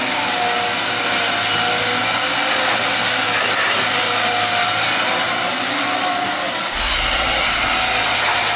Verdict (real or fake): real